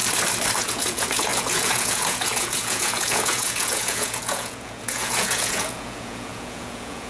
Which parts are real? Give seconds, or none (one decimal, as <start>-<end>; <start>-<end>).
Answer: 0.0-0.6

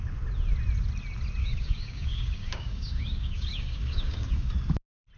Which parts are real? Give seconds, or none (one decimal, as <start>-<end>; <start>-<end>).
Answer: 0.0-1.4; 4.5-5.2

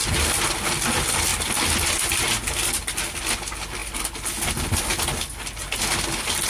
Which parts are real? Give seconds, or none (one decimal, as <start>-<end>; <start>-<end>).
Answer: 0.0-6.5

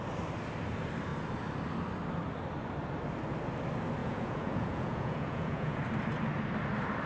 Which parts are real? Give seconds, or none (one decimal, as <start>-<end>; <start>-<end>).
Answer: 0.0-4.0; 5.8-7.1

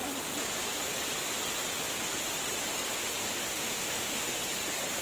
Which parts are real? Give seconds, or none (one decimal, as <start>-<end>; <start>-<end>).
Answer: 0.0-3.5; 4.4-5.0

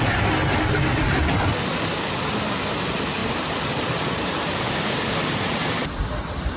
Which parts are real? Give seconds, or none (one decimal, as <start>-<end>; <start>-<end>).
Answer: 0.0-3.2; 5.7-6.6